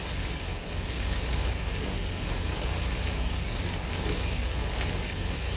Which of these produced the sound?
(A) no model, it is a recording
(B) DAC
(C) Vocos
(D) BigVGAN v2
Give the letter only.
B